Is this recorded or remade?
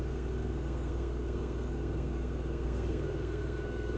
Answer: remade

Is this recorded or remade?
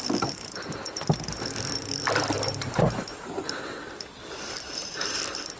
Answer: remade